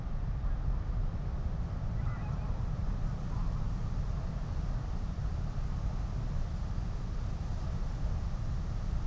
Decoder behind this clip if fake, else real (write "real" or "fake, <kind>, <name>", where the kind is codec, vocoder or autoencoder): real